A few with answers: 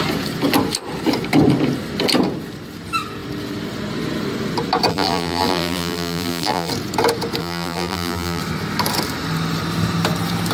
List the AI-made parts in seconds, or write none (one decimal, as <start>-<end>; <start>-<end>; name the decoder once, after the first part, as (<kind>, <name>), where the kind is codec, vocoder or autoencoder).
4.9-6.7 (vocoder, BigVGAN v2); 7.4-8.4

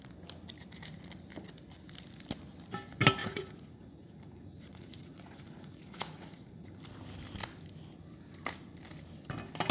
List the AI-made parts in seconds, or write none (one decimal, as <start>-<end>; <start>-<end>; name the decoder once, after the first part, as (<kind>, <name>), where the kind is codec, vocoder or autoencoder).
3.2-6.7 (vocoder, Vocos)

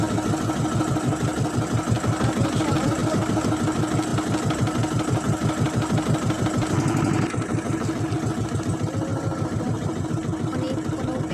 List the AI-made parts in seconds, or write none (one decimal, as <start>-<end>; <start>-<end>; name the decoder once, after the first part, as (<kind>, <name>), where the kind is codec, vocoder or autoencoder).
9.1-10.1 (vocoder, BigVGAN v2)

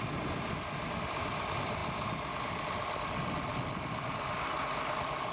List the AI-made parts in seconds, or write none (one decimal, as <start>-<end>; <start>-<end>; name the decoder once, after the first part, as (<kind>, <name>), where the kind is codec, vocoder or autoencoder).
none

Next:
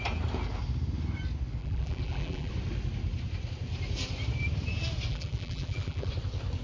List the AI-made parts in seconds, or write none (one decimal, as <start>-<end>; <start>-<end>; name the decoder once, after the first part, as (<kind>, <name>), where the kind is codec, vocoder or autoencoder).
1.6-2.5 (vocoder, BigVGAN v2); 5.1-6.1

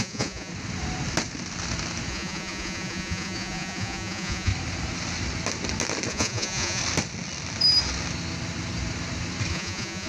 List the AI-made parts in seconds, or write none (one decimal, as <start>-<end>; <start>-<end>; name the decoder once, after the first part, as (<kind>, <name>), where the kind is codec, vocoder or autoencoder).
0.0-0.5 (vocoder, Vocos); 2.1-4.5; 6.1-6.8; 9.5-10.1